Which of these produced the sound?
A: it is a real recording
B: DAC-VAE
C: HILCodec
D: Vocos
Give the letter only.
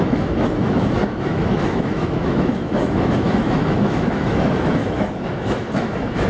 B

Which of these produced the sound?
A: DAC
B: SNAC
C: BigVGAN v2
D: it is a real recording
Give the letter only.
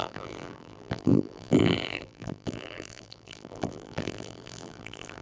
C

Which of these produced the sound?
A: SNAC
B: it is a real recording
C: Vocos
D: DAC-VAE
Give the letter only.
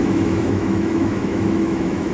D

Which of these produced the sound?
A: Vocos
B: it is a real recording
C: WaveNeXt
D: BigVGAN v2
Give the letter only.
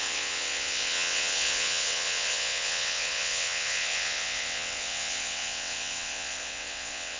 C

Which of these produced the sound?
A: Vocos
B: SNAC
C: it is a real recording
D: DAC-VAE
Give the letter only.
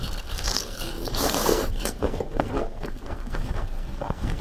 B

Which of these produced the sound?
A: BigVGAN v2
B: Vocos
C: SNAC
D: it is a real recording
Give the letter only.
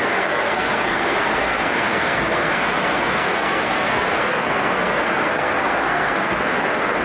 C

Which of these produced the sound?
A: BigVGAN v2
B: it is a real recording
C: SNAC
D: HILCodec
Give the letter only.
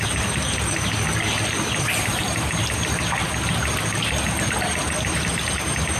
B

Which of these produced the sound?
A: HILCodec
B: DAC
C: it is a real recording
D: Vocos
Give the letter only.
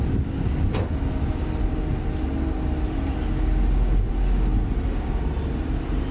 C